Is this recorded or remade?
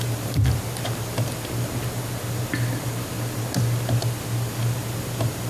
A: recorded